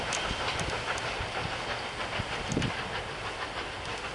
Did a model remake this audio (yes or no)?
no